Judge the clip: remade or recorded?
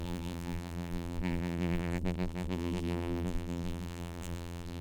remade